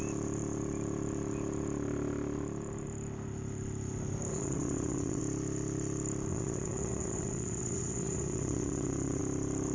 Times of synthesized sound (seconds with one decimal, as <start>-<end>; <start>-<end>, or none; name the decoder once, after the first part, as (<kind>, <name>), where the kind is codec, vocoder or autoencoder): 4.3-5.2 (vocoder, WaveNeXt); 6.3-9.2